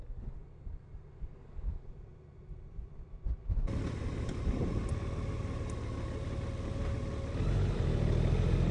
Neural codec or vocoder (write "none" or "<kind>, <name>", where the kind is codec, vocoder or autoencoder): none